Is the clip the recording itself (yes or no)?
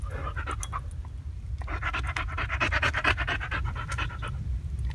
yes